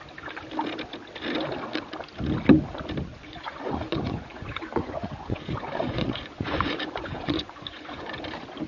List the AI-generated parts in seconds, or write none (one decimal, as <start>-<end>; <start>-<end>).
3.1-8.1